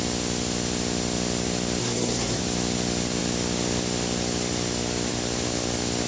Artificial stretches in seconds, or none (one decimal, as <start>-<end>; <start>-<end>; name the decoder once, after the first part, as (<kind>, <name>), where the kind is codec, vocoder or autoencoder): 1.8-2.4 (codec, SNAC)